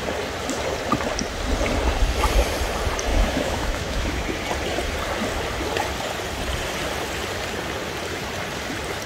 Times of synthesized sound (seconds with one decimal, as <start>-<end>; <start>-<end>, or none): 3.1-4.2

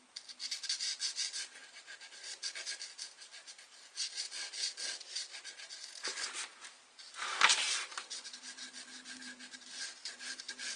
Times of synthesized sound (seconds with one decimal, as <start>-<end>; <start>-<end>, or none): none

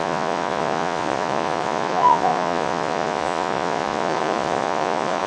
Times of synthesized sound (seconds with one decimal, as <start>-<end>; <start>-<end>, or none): 0.0-5.3

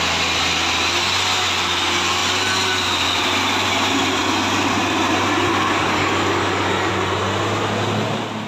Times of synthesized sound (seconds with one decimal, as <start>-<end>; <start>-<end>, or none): 5.5-6.9

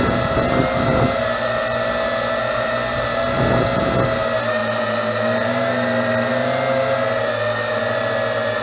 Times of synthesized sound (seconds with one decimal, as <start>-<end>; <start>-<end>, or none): none